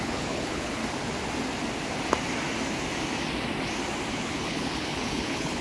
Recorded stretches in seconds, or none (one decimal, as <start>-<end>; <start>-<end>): 0.8-4.1